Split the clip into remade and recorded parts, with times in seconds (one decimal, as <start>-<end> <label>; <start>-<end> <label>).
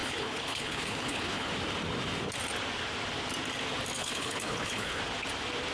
0.0-1.5 remade; 1.5-4.0 recorded; 4.0-5.0 remade; 5.0-5.7 recorded